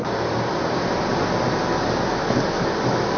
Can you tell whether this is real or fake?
real